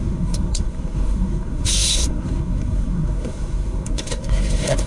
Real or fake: fake